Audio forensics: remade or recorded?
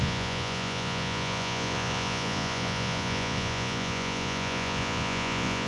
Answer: remade